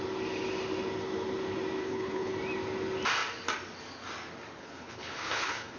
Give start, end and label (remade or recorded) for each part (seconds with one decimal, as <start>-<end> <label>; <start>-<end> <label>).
0.0-1.8 recorded; 1.8-2.3 remade; 2.3-4.6 recorded; 4.6-5.8 remade